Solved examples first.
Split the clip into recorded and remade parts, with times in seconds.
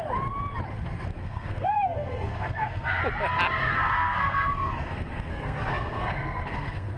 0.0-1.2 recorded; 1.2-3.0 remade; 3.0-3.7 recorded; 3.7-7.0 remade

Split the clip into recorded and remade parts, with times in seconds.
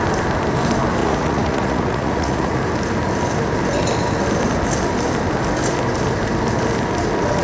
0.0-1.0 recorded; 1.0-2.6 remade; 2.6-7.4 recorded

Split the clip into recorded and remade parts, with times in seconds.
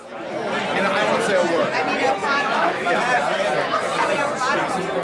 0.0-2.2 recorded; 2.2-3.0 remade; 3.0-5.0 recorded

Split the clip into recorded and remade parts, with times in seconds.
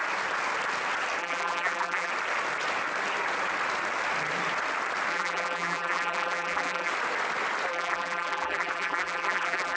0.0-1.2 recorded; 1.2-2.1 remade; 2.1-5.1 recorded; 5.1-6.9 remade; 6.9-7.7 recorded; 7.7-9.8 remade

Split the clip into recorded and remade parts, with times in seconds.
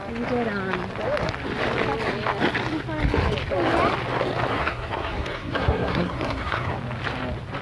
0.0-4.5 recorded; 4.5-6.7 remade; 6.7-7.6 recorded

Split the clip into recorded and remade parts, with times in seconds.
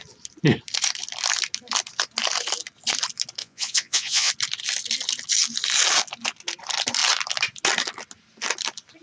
0.0-3.4 recorded; 3.4-4.3 remade; 4.3-9.0 recorded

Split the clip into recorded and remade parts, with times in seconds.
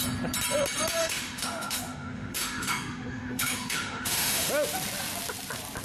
0.0-1.0 recorded; 1.0-4.5 remade; 4.5-5.8 recorded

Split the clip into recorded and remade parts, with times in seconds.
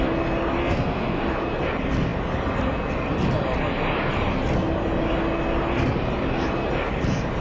0.0-0.6 recorded; 0.6-1.2 remade; 1.2-7.4 recorded